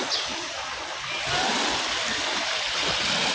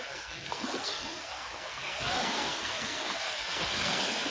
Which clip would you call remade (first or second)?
second